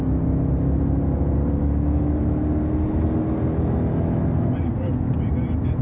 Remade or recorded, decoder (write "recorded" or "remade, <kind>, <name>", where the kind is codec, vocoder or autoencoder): recorded